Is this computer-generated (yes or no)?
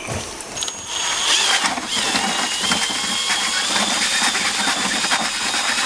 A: no